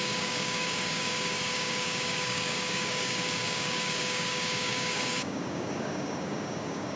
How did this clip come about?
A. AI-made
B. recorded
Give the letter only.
A